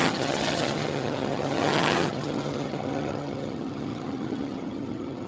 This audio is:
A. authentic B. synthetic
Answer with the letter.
B